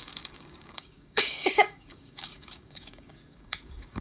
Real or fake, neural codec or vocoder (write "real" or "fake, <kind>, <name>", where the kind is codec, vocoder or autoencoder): fake, codec, DAC